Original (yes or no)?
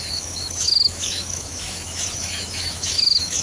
no